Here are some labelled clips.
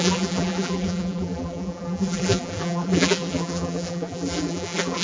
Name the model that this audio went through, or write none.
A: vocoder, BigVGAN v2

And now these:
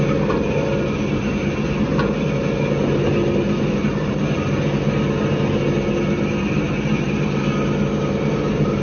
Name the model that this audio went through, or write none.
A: none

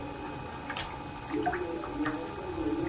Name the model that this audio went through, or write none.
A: none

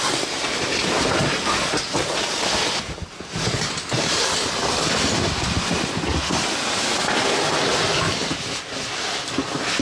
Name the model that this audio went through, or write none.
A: none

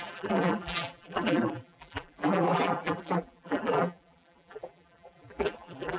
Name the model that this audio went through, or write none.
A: vocoder, BigVGAN v2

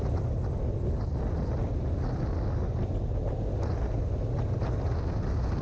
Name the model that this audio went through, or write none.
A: none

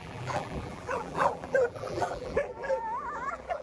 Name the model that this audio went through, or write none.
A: vocoder, BigVGAN v2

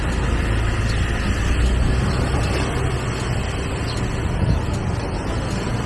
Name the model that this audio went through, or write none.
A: none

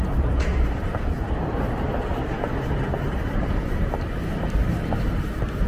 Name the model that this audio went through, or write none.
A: vocoder, BigVGAN v2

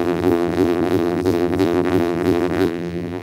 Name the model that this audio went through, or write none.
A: vocoder, BigVGAN v2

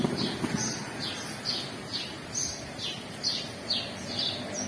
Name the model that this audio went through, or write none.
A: none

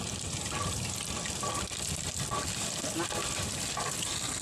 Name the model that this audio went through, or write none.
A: none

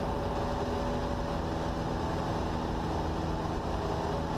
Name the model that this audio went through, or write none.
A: none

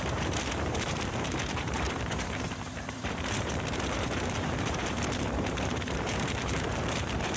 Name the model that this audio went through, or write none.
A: vocoder, BigVGAN v2